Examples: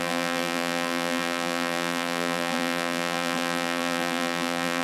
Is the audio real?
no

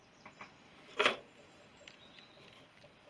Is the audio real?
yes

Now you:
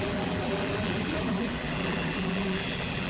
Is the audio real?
no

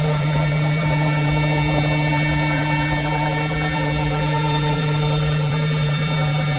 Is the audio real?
no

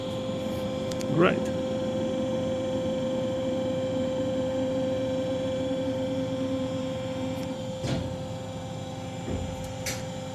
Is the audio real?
no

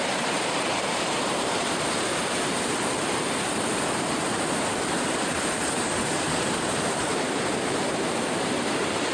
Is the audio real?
no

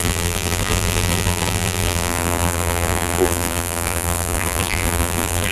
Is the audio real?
no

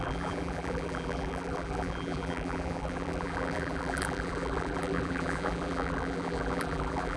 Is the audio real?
no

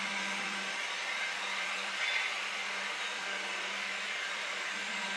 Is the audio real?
no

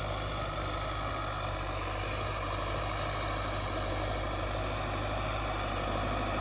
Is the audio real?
yes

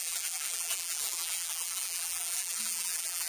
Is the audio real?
no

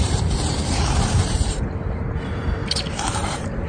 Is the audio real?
no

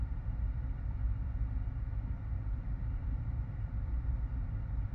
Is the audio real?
no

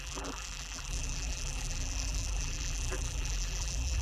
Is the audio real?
no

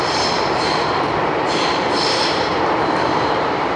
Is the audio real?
no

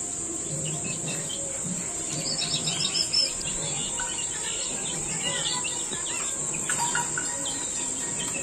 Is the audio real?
no